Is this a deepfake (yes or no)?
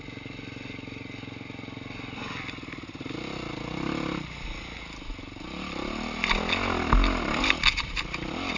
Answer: no